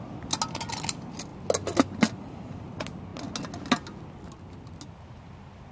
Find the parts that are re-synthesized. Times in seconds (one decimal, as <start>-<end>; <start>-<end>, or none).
none